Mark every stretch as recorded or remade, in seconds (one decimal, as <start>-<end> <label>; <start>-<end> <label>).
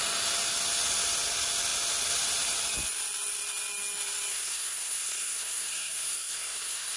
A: 0.0-4.3 recorded; 4.3-7.0 remade